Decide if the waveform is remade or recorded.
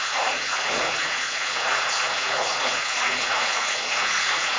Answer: remade